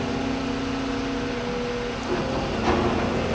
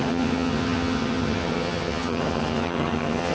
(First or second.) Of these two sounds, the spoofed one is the second